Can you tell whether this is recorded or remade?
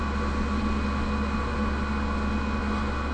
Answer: recorded